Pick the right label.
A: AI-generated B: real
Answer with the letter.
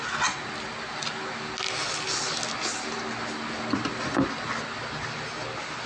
B